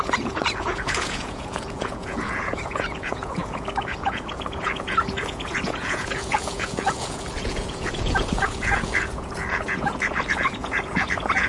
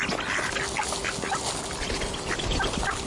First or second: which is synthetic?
first